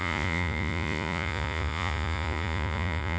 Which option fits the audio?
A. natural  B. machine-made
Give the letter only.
B